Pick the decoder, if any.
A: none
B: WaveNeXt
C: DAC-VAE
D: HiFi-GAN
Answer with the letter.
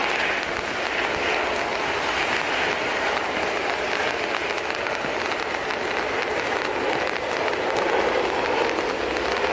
A